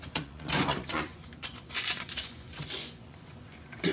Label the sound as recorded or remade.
remade